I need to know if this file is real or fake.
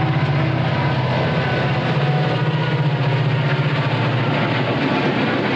real